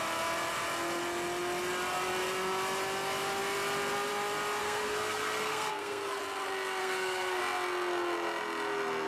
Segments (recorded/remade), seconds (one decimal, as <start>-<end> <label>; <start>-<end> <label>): 0.0-4.6 recorded; 4.6-6.2 remade; 6.2-6.8 recorded; 6.8-7.4 remade; 7.4-9.1 recorded